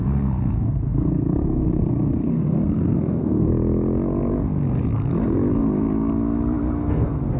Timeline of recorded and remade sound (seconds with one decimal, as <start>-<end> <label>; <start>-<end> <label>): 0.0-3.5 remade; 3.5-6.9 recorded; 6.9-7.4 remade

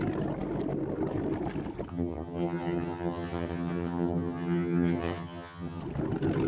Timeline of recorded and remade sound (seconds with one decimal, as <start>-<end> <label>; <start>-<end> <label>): 0.0-1.9 recorded; 1.9-5.8 remade; 5.8-6.5 recorded

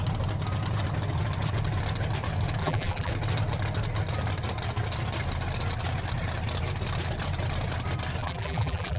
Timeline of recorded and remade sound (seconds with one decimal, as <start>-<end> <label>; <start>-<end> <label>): 0.0-2.6 recorded; 2.6-3.1 remade; 3.1-8.2 recorded; 8.2-9.0 remade

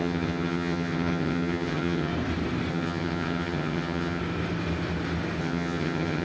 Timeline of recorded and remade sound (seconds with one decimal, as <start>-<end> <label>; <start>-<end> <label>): 0.0-2.1 remade; 2.1-2.7 recorded; 2.7-4.2 remade; 4.2-5.4 recorded; 5.4-6.2 remade